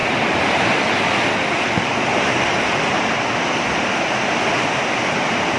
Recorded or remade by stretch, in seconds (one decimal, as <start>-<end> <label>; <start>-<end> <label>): 0.0-5.6 recorded